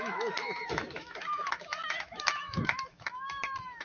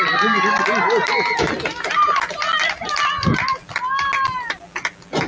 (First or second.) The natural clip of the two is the second